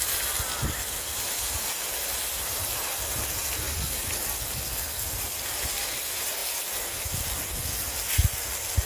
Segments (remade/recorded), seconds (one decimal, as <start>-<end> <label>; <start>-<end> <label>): 0.0-8.9 recorded